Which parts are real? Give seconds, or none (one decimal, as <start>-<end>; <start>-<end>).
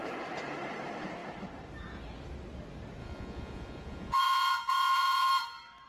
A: 0.0-3.0; 5.3-5.9